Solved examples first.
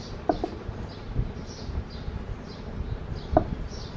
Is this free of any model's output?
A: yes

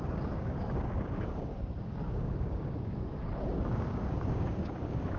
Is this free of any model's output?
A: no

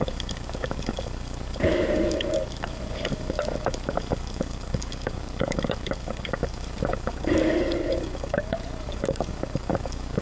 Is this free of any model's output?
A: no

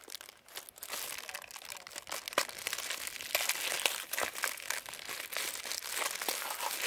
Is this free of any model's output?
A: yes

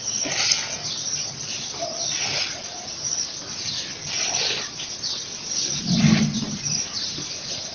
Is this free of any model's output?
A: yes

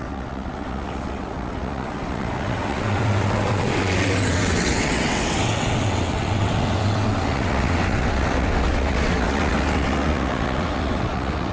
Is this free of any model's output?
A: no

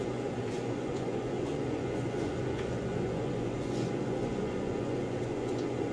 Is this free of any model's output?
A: no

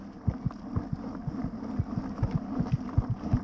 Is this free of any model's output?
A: yes